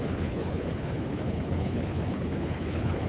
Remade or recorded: remade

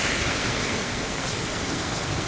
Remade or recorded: remade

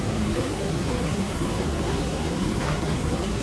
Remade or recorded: remade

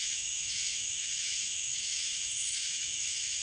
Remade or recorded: remade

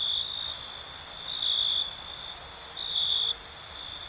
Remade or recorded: recorded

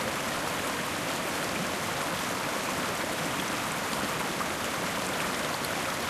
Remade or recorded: recorded